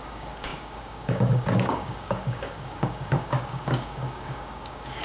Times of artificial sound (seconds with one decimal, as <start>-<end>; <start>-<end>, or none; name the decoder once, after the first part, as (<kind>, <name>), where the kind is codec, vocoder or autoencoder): 0.0-5.0 (codec, DAC)